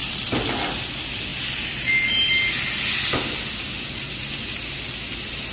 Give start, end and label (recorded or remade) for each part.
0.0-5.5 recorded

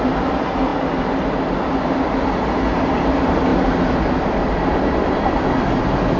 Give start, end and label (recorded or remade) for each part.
0.0-6.2 recorded